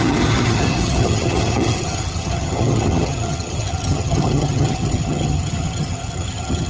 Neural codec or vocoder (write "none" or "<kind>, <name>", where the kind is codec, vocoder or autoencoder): vocoder, HiFi-GAN